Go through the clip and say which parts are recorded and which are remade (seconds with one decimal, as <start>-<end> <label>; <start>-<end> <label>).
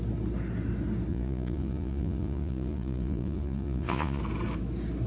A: 0.0-1.1 recorded; 1.1-4.2 remade; 4.2-5.1 recorded